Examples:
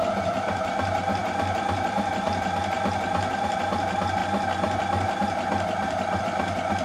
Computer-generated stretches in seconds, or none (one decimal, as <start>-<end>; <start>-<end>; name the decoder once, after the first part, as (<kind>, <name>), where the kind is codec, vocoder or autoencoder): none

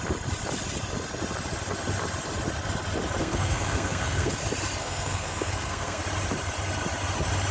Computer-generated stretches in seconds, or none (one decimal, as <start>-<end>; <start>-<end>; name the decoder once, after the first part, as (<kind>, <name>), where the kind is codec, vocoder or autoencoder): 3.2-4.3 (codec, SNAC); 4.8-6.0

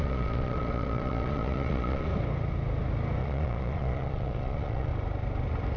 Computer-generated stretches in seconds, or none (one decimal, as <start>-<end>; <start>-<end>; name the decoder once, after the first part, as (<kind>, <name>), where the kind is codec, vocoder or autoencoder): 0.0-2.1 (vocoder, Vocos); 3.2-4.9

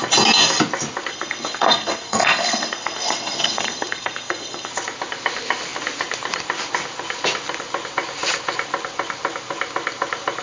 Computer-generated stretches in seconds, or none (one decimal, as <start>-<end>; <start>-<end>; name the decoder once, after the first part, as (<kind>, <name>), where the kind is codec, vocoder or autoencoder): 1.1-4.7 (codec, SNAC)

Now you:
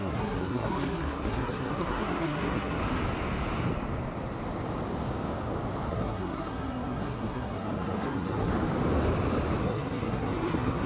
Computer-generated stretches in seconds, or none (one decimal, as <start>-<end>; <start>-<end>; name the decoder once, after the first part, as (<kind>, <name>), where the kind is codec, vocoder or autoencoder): 0.0-2.8 (codec, SNAC); 5.9-8.5; 9.6-10.9

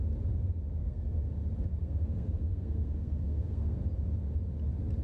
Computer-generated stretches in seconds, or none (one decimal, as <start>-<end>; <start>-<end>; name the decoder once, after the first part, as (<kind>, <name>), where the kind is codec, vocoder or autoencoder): 0.8-1.3 (codec, SNAC); 1.8-3.8

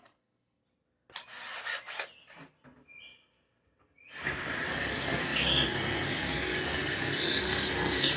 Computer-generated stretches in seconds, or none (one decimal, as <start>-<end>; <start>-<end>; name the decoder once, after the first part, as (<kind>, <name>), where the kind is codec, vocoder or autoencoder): 0.0-0.6 (codec, SNAC); 4.7-8.2

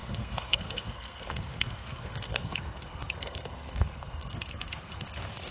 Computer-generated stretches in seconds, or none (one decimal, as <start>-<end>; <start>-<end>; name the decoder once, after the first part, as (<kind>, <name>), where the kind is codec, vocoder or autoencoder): 0.0-5.5 (codec, SNAC)